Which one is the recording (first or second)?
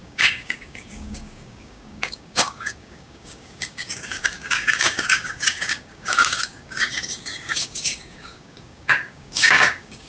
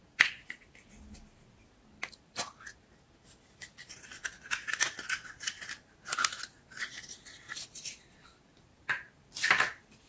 second